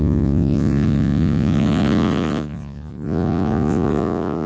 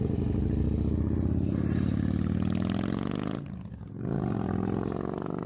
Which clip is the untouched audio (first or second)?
second